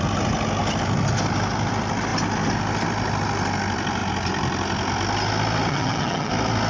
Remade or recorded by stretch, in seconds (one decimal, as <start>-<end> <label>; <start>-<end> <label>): 0.0-5.7 recorded; 5.7-6.3 remade; 6.3-6.7 recorded